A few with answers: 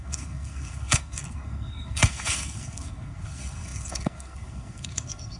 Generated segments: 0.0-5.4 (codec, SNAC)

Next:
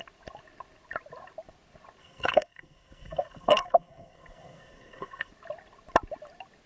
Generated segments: 2.0-5.3 (codec, SNAC)

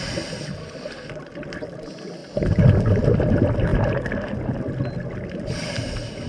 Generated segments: 0.6-1.1 (codec, SNAC)

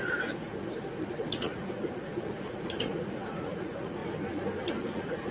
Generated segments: 0.0-4.0 (vocoder, Vocos); 4.7-5.3

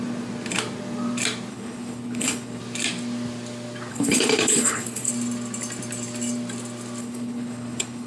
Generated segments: 1.5-2.6 (codec, HILCodec); 3.9-5.1; 7.0-8.1